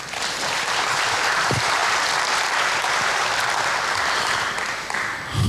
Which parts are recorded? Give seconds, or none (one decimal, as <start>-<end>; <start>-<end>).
1.8-2.5; 3.3-5.5